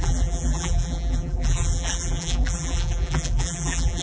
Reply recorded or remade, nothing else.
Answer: remade